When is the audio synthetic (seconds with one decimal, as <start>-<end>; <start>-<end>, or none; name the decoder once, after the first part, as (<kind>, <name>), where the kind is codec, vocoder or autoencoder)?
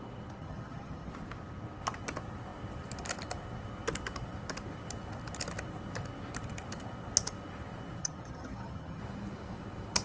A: 0.4-1.1 (vocoder, HiFi-GAN); 8.0-9.0